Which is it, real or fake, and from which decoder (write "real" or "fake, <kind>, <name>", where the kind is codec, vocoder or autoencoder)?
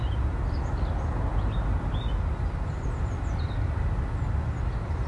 real